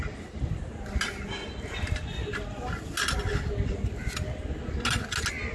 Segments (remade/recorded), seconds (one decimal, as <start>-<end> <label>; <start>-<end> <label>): 0.0-5.5 recorded